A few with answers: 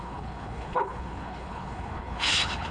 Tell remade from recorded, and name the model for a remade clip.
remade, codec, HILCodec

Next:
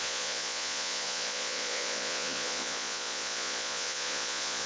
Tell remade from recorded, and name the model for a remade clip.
remade, vocoder, Vocos